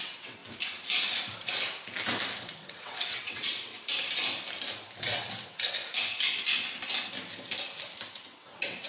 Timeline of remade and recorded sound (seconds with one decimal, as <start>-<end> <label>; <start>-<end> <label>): 0.0-0.4 remade; 0.4-2.4 recorded; 2.4-3.7 remade; 3.7-5.0 recorded; 5.0-5.8 remade; 5.8-8.1 recorded; 8.1-8.9 remade